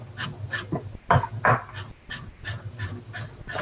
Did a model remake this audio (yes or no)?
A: no